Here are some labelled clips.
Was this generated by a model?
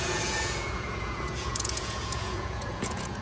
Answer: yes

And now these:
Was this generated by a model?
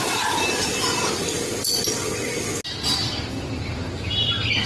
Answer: no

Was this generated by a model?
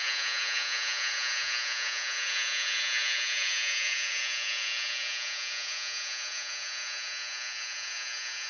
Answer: yes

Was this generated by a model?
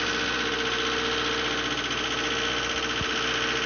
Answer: no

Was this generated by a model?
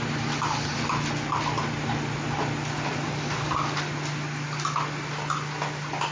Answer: no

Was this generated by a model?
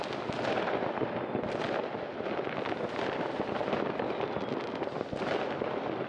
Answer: no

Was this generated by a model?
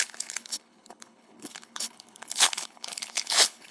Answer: yes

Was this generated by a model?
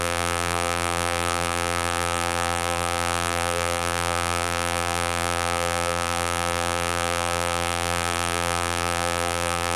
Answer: yes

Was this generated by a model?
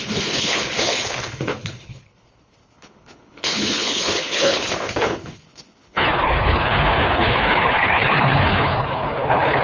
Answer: yes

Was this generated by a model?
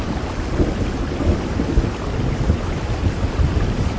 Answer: no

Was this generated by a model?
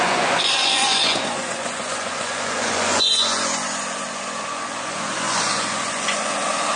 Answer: yes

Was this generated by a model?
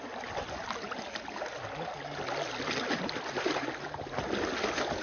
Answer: no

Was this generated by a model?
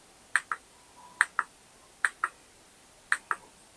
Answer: no